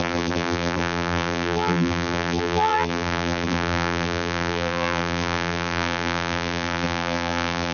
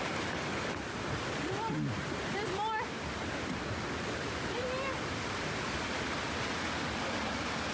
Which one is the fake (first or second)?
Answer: first